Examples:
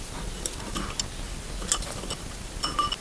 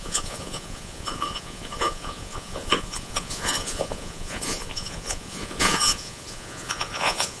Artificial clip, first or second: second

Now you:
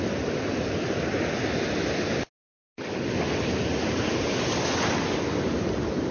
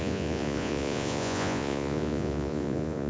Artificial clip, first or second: second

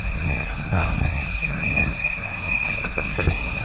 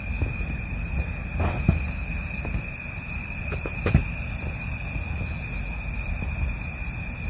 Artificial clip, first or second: first